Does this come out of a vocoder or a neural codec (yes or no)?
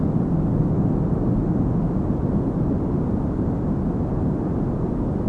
no